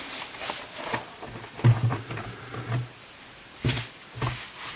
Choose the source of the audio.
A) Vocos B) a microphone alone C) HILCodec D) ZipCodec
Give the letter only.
B